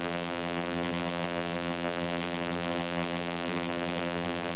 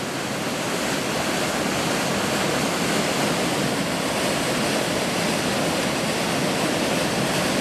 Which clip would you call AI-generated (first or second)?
first